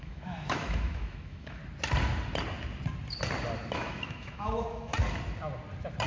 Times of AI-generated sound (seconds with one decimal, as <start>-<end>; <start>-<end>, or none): 0.0-1.6; 3.7-4.9